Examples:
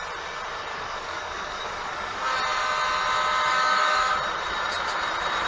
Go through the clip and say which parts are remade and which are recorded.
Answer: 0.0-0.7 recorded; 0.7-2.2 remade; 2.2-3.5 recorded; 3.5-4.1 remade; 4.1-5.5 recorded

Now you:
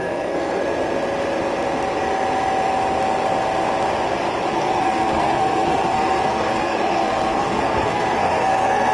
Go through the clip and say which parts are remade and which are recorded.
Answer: 0.0-0.6 remade; 0.6-4.5 recorded; 4.5-8.9 remade